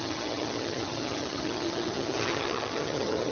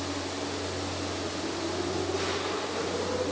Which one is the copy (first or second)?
first